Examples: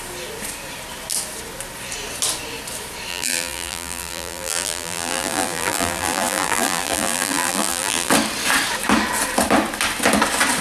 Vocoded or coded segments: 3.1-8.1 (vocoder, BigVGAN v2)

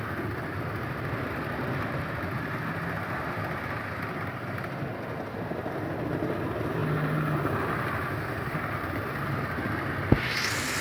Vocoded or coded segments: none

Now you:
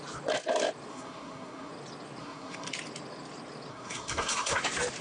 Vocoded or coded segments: 0.9-1.7 (codec, SNAC); 2.2-2.7; 3.7-4.6